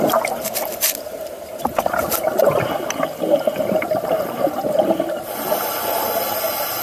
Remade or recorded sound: recorded